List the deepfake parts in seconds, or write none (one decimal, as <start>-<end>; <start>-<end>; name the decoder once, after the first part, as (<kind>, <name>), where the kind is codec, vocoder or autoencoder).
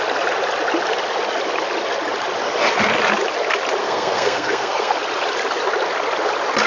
3.8-4.9 (codec, SNAC)